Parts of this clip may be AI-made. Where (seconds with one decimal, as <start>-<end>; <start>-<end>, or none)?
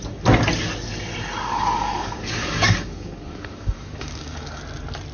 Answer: 1.5-4.6